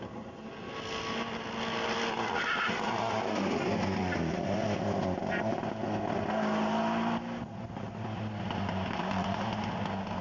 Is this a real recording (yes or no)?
yes